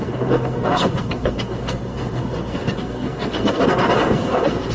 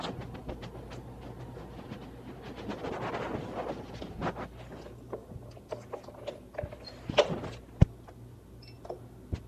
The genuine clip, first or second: second